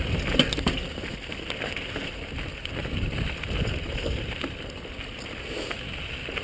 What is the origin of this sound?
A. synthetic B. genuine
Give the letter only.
B